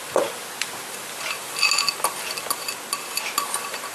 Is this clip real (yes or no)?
yes